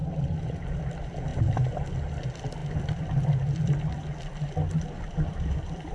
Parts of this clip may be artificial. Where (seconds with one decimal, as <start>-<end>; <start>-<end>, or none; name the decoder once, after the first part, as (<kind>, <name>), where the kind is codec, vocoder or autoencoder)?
none